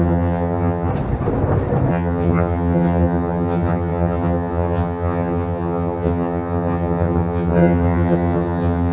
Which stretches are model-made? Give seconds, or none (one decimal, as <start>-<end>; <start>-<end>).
0.0-0.9; 1.9-8.9